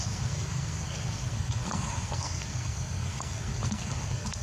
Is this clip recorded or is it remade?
remade